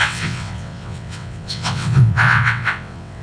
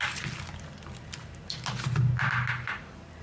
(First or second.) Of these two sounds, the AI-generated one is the first